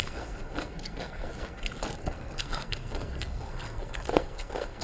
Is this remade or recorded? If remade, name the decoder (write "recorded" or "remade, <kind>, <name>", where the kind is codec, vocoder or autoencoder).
remade, codec, SNAC